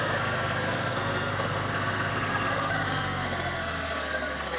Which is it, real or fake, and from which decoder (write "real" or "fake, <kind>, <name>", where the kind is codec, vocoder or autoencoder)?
fake, codec, SNAC